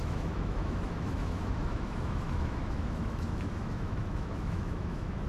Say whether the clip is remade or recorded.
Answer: remade